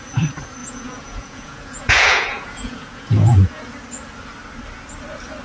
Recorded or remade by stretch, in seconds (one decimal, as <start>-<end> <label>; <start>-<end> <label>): 0.0-0.6 recorded; 0.6-3.6 remade; 3.6-5.4 recorded